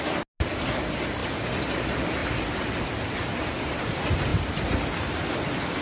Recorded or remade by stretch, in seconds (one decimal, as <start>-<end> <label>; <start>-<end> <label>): 0.0-5.8 recorded